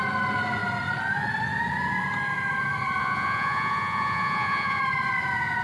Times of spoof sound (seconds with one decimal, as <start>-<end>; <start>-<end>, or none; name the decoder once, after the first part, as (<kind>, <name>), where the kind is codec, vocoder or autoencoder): 3.0-4.8 (vocoder, Vocos)